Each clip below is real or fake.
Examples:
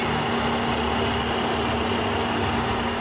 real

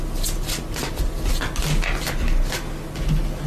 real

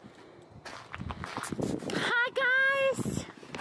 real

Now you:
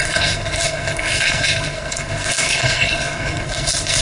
fake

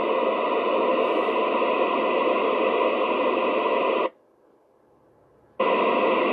real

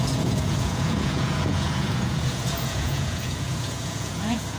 fake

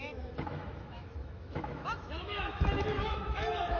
fake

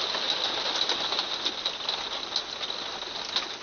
real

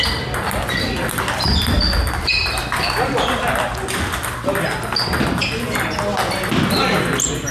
real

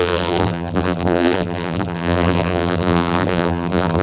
fake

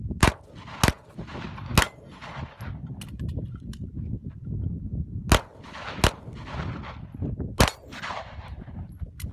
real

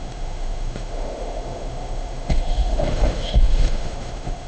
fake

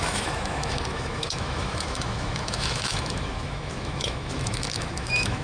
fake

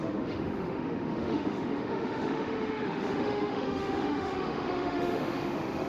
fake